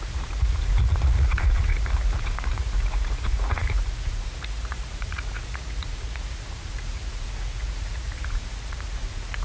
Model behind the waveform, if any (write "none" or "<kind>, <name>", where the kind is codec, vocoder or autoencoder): vocoder, Vocos